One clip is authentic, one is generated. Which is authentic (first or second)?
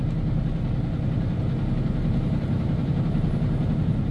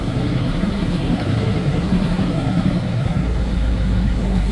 first